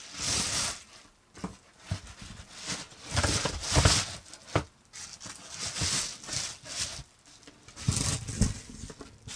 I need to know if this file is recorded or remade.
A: recorded